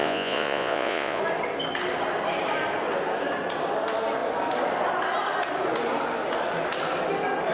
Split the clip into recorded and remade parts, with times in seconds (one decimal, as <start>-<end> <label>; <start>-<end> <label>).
0.0-1.2 remade; 1.2-7.5 recorded